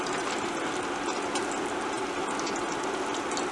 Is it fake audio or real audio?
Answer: real